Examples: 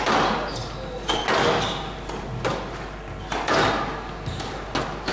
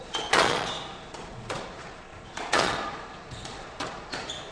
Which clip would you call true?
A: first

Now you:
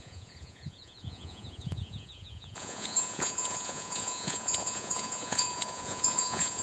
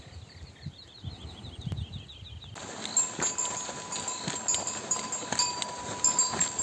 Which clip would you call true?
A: second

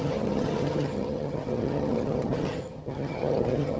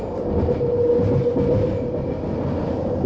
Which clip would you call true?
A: second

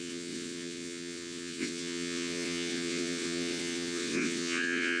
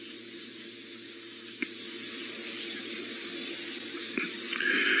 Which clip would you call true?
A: second